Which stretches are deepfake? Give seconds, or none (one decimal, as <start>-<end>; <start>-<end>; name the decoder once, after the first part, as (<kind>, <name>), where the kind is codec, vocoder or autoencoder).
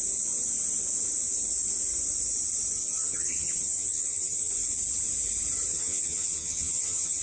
2.8-4.5 (vocoder, HiFi-GAN); 5.7-7.2